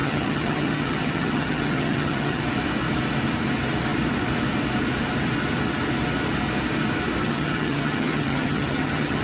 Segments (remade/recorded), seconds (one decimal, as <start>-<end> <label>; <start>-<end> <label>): 0.0-2.4 remade; 2.4-7.2 recorded; 7.2-9.2 remade